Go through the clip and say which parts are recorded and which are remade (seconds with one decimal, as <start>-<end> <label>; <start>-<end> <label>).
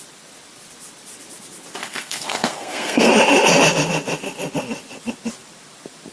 0.0-1.8 recorded; 1.8-3.1 remade; 3.1-6.1 recorded